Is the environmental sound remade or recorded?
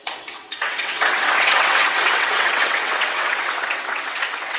remade